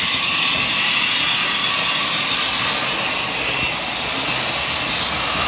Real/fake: real